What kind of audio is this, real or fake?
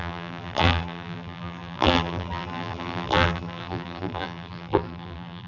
fake